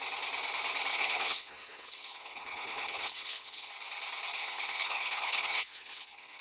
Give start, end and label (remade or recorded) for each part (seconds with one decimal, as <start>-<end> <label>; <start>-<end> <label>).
0.0-0.9 recorded; 0.9-3.7 remade; 3.7-4.4 recorded; 4.4-6.4 remade